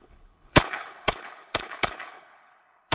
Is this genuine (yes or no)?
no